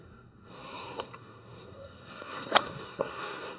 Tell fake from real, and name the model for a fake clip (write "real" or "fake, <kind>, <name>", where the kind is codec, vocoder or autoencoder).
fake, codec, SNAC